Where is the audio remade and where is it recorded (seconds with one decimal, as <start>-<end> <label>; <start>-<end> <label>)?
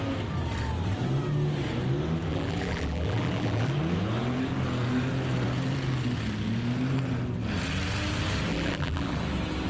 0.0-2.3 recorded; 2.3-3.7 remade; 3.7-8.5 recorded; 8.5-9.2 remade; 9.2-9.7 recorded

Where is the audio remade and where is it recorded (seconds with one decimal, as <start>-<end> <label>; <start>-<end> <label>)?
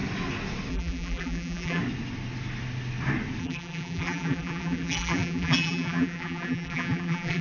0.0-0.7 recorded; 0.7-1.8 remade; 1.8-3.4 recorded; 3.4-7.4 remade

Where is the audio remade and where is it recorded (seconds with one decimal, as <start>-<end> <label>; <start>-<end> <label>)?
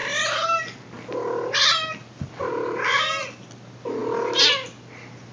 0.0-5.3 recorded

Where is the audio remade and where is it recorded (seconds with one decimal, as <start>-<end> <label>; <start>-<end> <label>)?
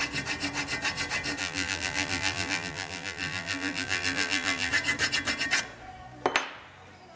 0.0-1.4 recorded; 1.4-4.7 remade; 4.7-7.2 recorded